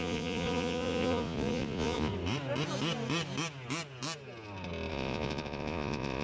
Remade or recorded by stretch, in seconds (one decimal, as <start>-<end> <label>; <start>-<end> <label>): 0.0-2.1 remade; 2.1-4.9 recorded; 4.9-6.2 remade